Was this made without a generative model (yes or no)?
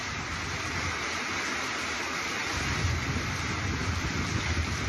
yes